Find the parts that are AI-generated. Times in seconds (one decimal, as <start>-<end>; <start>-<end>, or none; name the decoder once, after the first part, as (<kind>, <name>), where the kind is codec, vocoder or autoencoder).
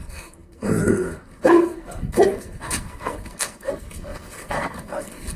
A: 0.0-5.4 (codec, SNAC)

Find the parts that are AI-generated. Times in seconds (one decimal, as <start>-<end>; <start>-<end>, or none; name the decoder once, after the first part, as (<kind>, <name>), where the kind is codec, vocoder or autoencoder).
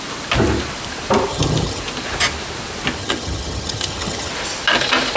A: 1.3-1.8 (vocoder, HiFi-GAN); 3.0-4.3